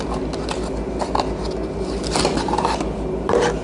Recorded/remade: recorded